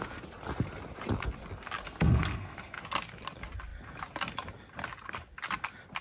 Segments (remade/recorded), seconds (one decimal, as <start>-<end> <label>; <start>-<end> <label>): 0.0-1.8 recorded; 1.8-2.8 remade; 2.8-6.0 recorded